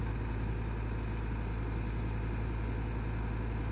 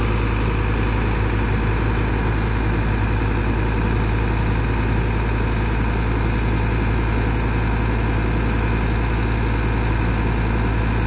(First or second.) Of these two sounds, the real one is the second